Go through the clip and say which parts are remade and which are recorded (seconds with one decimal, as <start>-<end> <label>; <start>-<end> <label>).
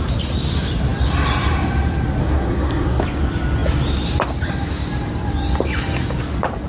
0.0-2.2 recorded; 2.2-3.0 remade; 3.0-6.7 recorded